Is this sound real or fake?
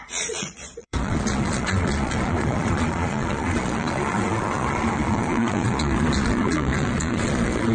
fake